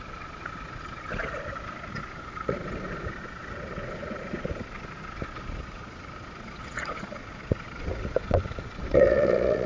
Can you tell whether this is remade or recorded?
remade